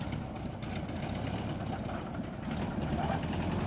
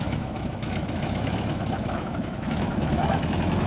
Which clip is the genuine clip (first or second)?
first